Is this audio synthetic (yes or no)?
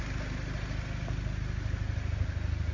no